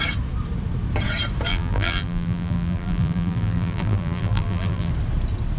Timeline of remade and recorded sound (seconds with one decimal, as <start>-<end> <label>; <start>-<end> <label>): 0.0-1.5 recorded; 1.5-4.9 remade; 4.9-5.6 recorded